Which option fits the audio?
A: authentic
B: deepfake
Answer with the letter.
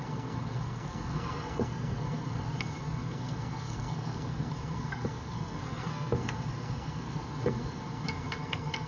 B